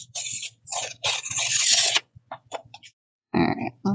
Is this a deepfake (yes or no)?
yes